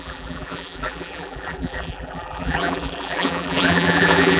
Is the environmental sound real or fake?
fake